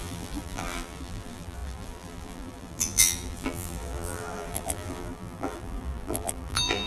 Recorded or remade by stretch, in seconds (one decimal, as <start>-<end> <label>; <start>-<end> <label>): 0.0-6.9 remade

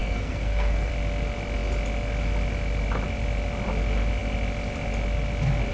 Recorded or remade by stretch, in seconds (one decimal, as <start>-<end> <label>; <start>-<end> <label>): 0.0-0.9 remade; 0.9-5.7 recorded

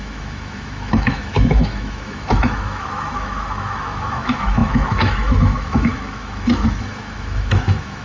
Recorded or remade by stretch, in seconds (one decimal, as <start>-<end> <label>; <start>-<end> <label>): 0.0-8.0 remade

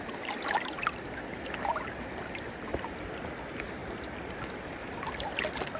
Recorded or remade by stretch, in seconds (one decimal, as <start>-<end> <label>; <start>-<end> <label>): 0.0-5.8 recorded